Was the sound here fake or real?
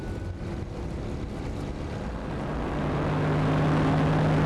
real